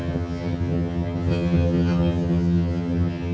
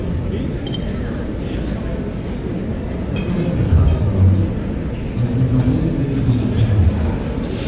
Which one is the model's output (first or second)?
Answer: first